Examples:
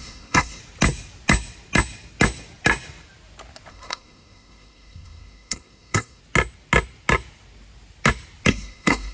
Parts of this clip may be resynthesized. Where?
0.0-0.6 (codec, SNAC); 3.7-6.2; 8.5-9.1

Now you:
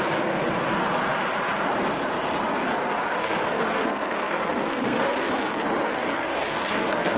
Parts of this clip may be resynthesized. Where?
3.2-5.3 (codec, SNAC); 5.8-7.2

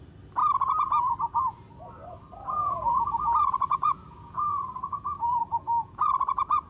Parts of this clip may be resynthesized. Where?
2.6-6.7 (vocoder, Vocos)